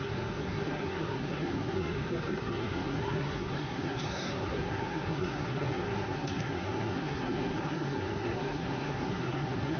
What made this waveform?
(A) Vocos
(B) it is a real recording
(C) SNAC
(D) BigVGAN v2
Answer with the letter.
C